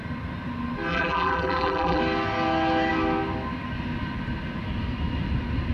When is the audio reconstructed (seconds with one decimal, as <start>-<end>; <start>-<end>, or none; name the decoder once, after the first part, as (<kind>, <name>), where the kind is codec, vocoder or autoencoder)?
0.9-2.0 (vocoder, BigVGAN v2)